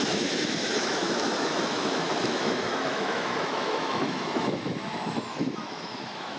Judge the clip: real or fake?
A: fake